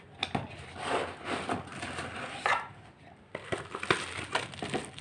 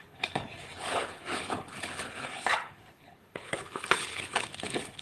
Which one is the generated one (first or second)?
second